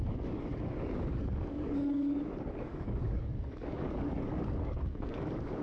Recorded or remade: remade